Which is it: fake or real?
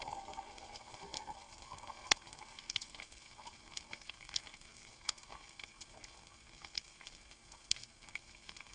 fake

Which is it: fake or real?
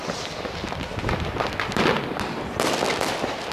real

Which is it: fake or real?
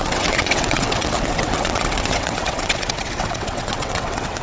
fake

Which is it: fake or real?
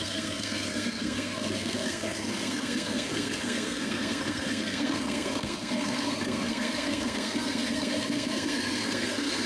fake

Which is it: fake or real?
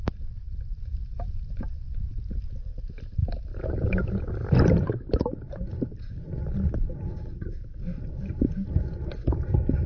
real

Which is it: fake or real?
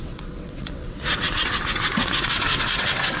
fake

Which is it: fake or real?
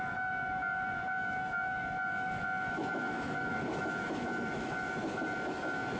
fake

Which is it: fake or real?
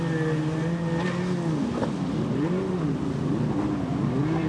real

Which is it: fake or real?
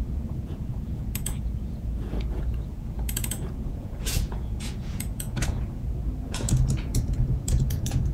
fake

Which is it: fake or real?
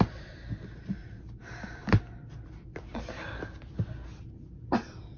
real